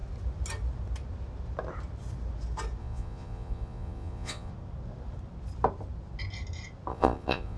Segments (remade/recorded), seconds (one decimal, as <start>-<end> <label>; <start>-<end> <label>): 0.0-2.8 recorded; 2.8-4.5 remade; 4.5-6.9 recorded; 6.9-7.6 remade